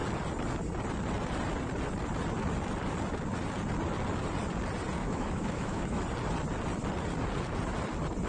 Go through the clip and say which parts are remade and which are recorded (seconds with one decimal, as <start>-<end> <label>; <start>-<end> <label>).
0.0-5.0 recorded; 5.0-6.0 remade; 6.0-8.3 recorded